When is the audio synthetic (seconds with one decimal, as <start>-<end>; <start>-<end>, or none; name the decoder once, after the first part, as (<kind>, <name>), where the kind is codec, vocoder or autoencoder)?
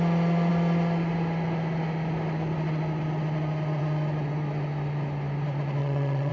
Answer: 5.8-6.3 (vocoder, Vocos)